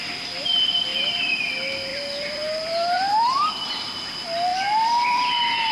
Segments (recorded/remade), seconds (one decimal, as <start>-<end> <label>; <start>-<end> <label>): 0.0-0.9 recorded; 0.9-1.5 remade; 1.5-1.9 recorded; 1.9-3.5 remade; 3.5-4.5 recorded; 4.5-5.3 remade; 5.3-5.7 recorded